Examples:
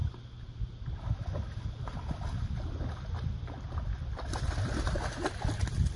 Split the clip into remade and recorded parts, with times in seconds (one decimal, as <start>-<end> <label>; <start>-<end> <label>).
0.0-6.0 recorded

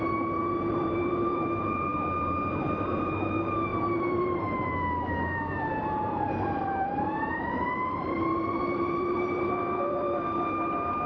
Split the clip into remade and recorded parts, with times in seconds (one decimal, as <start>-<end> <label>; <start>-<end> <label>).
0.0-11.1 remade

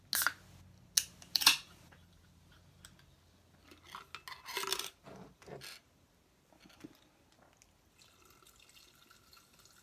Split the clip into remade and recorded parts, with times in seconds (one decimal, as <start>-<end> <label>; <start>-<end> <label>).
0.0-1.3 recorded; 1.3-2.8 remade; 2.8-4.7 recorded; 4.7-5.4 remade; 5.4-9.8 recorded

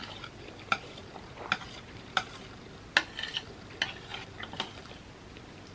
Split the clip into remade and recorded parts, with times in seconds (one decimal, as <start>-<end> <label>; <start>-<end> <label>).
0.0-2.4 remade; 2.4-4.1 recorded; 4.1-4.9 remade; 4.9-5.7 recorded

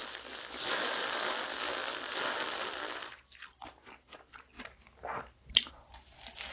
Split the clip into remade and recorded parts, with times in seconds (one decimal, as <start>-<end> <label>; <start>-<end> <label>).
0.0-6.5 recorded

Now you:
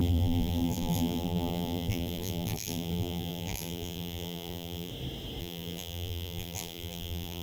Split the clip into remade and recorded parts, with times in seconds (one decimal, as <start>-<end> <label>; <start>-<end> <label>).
0.0-4.9 remade; 4.9-5.4 recorded; 5.4-7.4 remade